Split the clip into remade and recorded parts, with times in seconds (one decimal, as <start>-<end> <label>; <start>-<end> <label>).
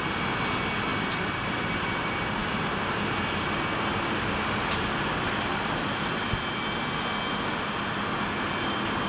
0.0-5.5 recorded; 5.5-6.9 remade; 6.9-9.1 recorded